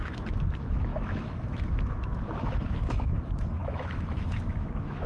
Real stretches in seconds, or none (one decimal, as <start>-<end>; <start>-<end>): none